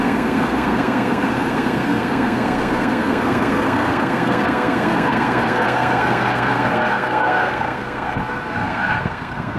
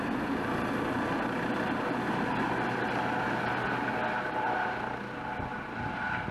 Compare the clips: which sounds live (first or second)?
second